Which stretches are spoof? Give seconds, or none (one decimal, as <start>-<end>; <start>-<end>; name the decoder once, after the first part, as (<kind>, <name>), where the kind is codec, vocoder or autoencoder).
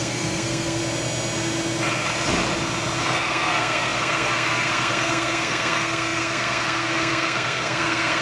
0.0-0.8 (codec, SNAC); 3.0-8.2